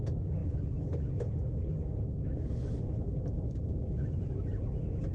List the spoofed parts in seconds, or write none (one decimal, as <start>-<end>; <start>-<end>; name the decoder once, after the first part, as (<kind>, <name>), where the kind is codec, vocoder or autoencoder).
0.0-5.1 (autoencoder, DAC-VAE)